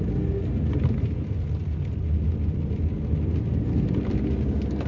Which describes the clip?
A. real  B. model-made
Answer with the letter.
A